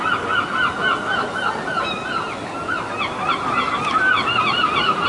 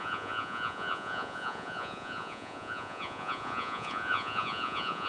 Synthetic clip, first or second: second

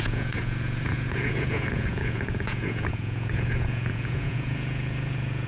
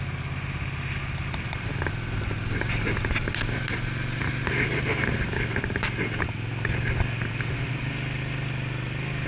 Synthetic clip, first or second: first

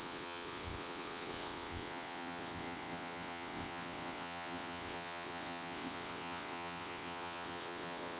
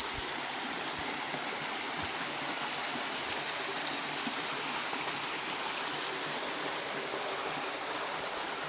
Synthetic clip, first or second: first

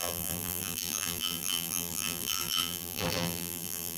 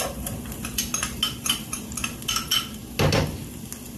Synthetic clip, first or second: first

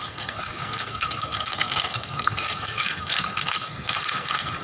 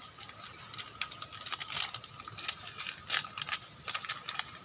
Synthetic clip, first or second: first